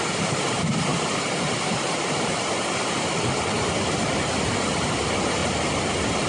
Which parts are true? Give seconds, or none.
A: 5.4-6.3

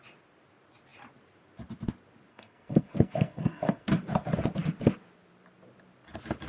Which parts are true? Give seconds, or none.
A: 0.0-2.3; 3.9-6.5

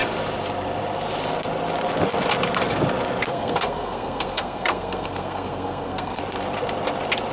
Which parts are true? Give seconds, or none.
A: 0.0-3.3; 6.2-7.3

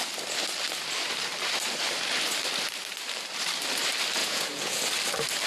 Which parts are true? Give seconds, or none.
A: 0.0-4.2; 4.8-5.5